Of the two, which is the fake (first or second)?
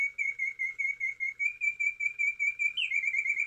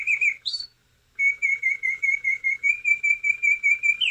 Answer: second